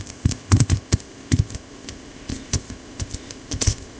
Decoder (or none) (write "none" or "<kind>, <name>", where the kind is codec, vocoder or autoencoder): codec, ZipCodec